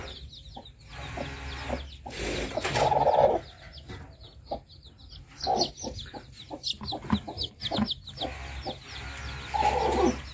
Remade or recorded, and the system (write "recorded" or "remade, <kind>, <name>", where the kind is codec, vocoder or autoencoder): recorded